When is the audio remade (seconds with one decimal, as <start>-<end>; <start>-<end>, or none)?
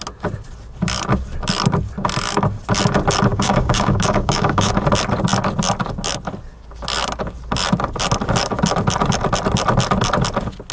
3.3-4.7